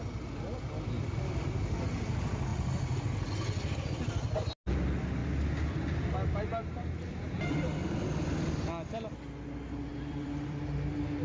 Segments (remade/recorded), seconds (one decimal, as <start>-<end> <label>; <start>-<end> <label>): 0.0-9.9 recorded; 9.9-10.6 remade; 10.6-11.2 recorded